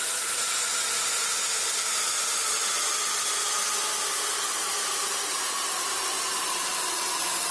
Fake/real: real